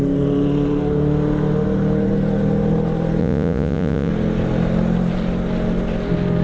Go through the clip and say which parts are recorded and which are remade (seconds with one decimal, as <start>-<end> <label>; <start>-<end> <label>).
0.0-3.2 recorded; 3.2-4.1 remade; 4.1-6.4 recorded